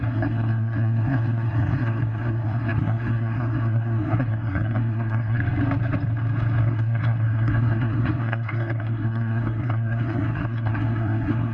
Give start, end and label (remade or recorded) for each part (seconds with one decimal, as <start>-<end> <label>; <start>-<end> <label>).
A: 0.0-5.4 remade; 5.4-6.6 recorded; 6.6-11.5 remade